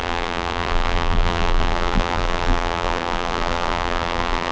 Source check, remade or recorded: remade